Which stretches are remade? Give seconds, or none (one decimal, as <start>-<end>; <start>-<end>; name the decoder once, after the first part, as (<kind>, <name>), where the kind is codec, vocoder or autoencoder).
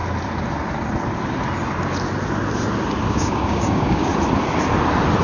3.1-4.1 (codec, DAC)